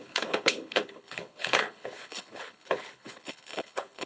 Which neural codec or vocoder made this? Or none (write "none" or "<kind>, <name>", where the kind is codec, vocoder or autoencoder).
codec, HILCodec